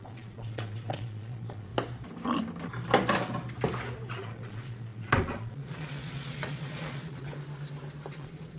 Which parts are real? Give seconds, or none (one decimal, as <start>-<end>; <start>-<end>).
1.7-4.1; 7.3-8.1